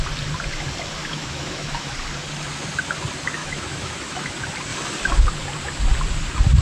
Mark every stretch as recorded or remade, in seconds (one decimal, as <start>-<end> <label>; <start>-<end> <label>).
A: 0.0-1.0 recorded; 1.0-1.9 remade; 1.9-3.4 recorded; 3.4-4.3 remade; 4.3-6.6 recorded